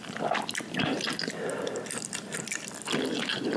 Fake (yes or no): no